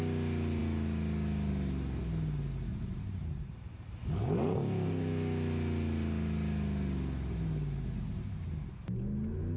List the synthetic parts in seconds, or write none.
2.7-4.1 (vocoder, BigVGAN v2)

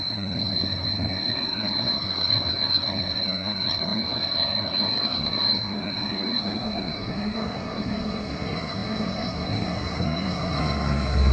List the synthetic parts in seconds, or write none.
0.0-11.3 (codec, SNAC)

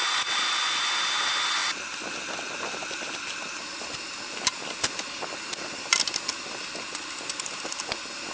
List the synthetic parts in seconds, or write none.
none

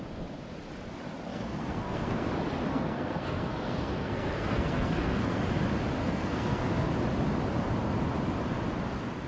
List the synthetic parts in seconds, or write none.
1.3-2.3 (codec, SNAC); 2.7-5.4; 6.0-6.9

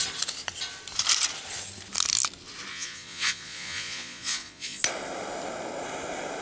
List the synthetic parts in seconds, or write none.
2.7-4.8 (vocoder, Vocos)

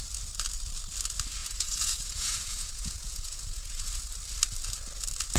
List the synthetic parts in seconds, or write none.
1.4-3.9 (vocoder, Vocos)

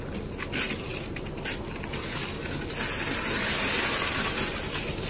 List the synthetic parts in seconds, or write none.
0.0-0.9 (vocoder, BigVGAN v2); 4.0-5.1

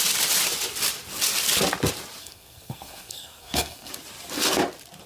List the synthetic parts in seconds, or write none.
2.2-3.9 (codec, SNAC)